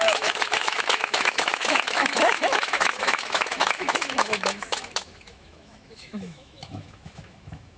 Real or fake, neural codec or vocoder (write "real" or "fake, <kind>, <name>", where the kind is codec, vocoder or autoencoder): fake, autoencoder, DAC-VAE